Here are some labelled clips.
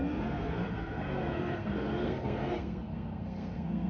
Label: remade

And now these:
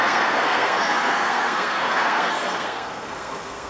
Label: remade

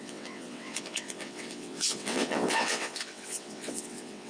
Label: remade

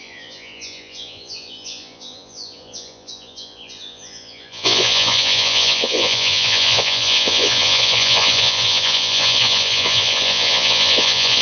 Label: remade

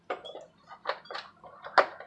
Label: recorded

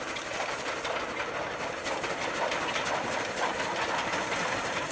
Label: recorded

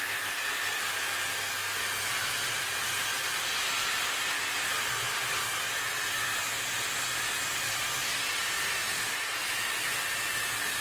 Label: recorded